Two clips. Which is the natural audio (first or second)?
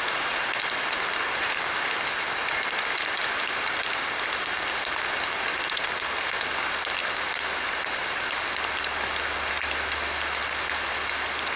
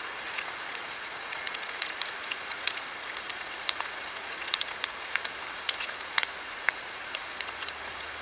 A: first